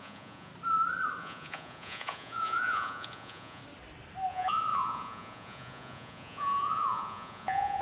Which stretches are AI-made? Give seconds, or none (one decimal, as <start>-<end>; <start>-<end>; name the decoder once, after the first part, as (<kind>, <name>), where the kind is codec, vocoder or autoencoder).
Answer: 0.0-0.5 (vocoder, Vocos); 1.2-3.6; 4.3-7.8

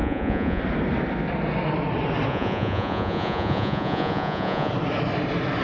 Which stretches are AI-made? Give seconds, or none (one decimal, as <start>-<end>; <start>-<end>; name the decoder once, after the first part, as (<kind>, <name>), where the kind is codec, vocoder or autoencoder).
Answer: 0.0-0.6 (vocoder, Vocos); 2.3-4.7

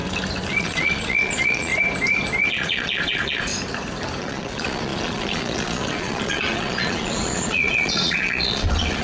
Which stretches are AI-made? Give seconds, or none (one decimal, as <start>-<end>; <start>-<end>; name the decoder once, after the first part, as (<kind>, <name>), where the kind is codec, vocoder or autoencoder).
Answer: 0.6-1.7 (vocoder, Vocos); 2.5-3.5; 4.2-9.0

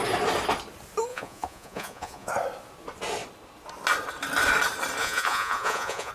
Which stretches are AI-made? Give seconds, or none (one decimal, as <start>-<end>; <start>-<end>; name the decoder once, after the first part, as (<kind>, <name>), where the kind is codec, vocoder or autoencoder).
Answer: 1.1-2.3 (vocoder, Vocos); 5.0-6.1

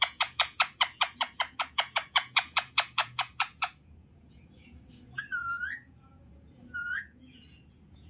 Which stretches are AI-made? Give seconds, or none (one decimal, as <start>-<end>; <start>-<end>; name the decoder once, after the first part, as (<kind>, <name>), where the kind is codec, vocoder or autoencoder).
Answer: 0.0-8.1 (vocoder, Vocos)